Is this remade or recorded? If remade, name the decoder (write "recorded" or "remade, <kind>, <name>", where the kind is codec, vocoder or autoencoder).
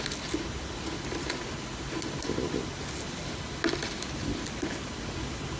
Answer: recorded